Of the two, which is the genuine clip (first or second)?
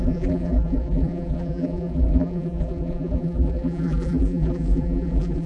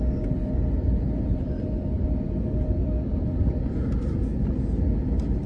second